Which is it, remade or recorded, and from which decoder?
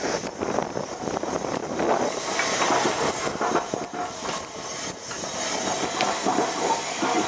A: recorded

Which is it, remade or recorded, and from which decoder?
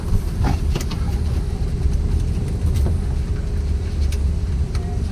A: recorded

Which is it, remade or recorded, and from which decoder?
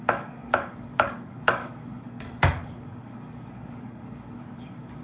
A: remade, codec, DAC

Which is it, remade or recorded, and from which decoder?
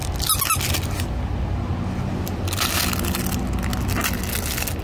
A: recorded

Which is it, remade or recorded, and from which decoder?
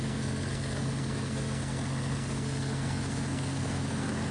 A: remade, codec, SNAC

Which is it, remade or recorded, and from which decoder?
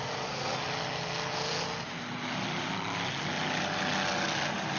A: recorded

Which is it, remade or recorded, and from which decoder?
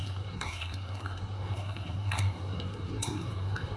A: remade, codec, SNAC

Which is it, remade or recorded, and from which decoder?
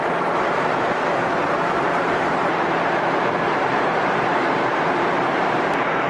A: remade, vocoder, BigVGAN v2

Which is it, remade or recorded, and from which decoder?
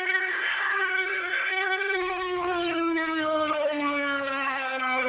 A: remade, codec, SNAC